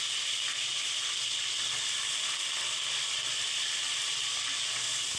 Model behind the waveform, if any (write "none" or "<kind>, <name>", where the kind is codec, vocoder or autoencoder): none